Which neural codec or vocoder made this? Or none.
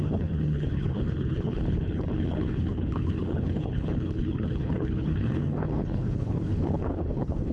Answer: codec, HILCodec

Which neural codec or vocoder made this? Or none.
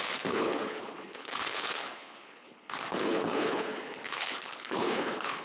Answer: codec, HILCodec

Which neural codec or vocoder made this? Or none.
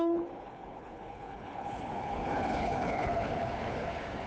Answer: codec, HILCodec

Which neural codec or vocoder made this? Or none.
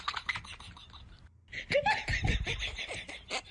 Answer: none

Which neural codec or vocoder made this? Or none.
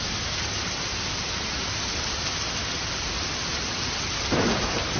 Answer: none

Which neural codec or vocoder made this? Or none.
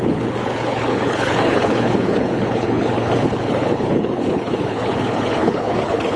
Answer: codec, HILCodec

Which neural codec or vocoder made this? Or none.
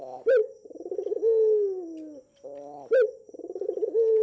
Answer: none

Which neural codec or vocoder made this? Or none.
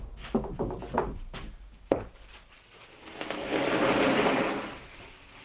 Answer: none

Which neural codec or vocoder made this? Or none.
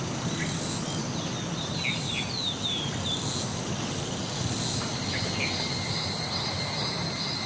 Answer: none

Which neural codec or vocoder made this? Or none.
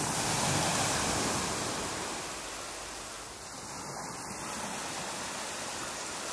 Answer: none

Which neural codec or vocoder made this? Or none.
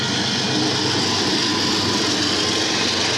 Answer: none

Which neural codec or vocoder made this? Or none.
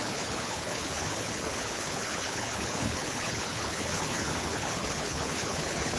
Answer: codec, HILCodec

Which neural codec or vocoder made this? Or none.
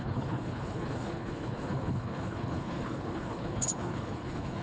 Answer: codec, HILCodec